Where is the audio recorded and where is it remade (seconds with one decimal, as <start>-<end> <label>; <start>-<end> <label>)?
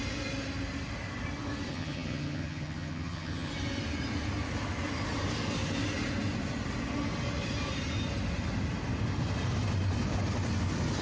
0.0-1.7 recorded; 1.7-3.5 remade; 3.5-11.0 recorded